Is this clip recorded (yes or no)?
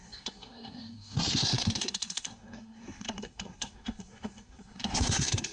no